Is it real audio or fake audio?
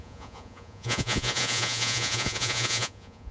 fake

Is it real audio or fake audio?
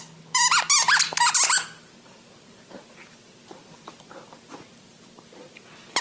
real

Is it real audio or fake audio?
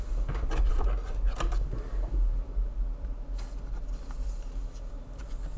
real